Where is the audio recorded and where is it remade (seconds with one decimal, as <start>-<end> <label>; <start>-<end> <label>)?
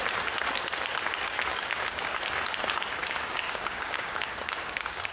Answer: 0.0-1.5 recorded; 1.5-2.1 remade; 2.1-3.0 recorded; 3.0-5.1 remade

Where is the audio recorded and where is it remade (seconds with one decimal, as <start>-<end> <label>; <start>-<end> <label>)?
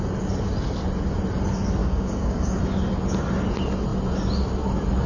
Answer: 0.0-1.8 recorded; 1.8-2.6 remade; 2.6-5.1 recorded